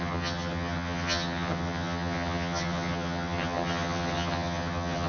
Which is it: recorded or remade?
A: remade